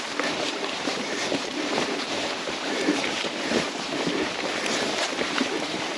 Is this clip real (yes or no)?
no